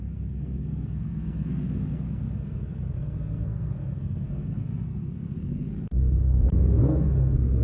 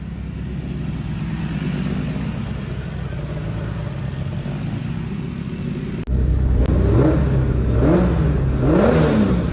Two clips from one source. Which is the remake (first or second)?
first